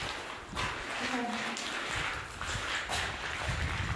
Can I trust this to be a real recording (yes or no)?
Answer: yes